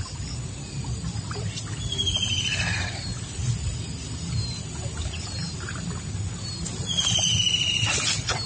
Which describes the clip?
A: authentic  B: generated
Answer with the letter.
A